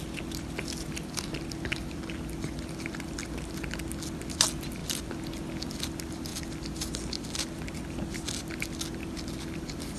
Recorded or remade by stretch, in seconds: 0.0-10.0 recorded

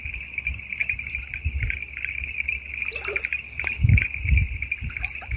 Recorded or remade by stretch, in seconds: 0.0-5.4 recorded

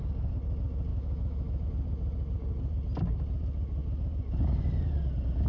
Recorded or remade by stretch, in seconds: 0.0-0.9 recorded; 0.9-1.7 remade; 1.7-5.5 recorded

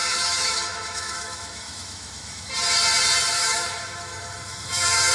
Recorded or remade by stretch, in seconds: 0.0-2.5 remade; 2.5-3.4 recorded; 3.4-5.1 remade

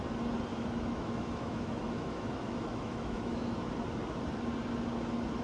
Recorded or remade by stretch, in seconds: 0.0-0.5 recorded; 0.5-3.7 remade; 3.7-5.4 recorded

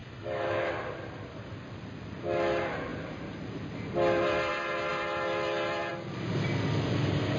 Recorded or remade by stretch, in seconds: 0.0-0.7 remade; 0.7-7.4 recorded

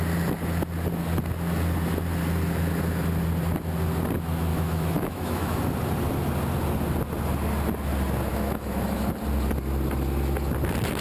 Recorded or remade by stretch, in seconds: 0.0-4.5 recorded; 4.5-5.6 remade; 5.6-8.3 recorded; 8.3-9.1 remade; 9.1-11.0 recorded